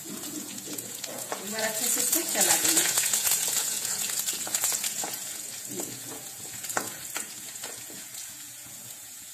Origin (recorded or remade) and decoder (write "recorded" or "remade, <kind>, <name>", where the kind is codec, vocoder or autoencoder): remade, vocoder, Vocos